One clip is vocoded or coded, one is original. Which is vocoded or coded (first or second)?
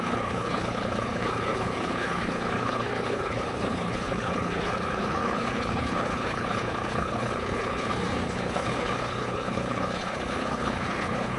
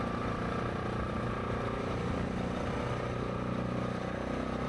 first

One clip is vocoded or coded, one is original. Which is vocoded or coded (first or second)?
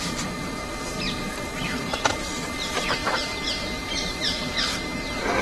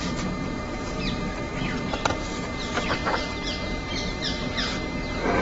first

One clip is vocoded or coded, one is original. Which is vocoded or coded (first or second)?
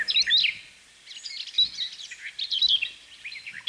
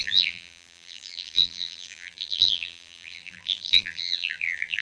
second